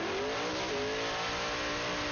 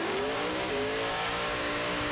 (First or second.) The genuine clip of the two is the first